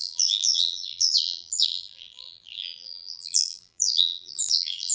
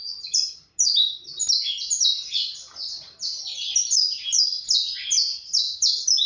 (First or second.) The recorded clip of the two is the second